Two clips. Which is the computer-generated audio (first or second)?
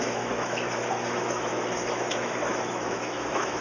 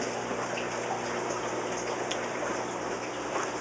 first